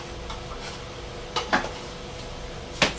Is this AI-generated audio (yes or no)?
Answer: no